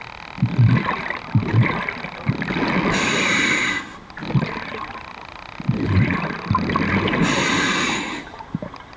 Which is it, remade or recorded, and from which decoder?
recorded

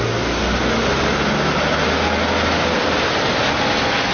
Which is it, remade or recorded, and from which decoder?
recorded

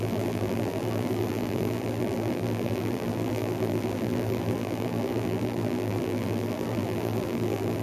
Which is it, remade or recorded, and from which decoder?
remade, vocoder, BigVGAN v2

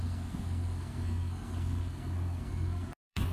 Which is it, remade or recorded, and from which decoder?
remade, codec, SNAC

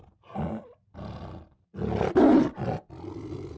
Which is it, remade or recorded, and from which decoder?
recorded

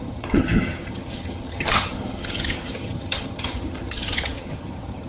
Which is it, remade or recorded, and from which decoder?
remade, vocoder, HiFi-GAN